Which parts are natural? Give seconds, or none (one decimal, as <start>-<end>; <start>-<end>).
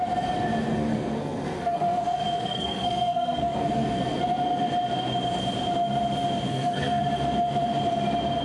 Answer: 0.0-0.7; 4.2-6.5; 7.0-8.4